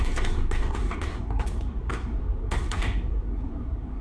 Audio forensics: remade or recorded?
remade